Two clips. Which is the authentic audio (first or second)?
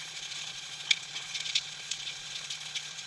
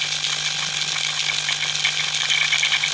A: second